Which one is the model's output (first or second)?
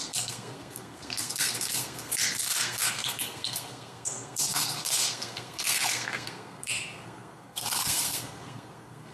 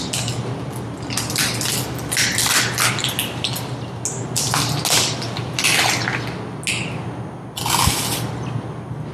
first